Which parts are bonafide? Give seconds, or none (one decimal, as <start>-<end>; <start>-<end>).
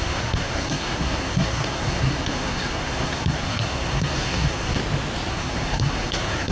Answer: 4.8-5.3